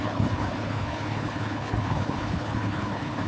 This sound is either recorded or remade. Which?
remade